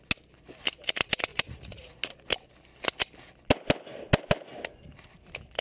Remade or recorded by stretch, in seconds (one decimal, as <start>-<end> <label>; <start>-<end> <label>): 0.0-1.3 recorded; 1.3-2.0 remade; 2.0-5.6 recorded